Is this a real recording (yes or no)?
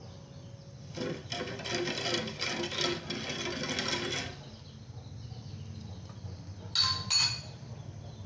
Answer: yes